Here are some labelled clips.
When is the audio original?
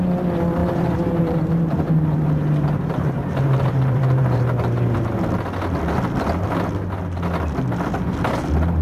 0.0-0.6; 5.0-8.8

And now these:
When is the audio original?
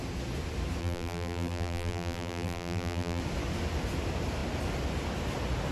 0.0-0.8; 3.2-5.7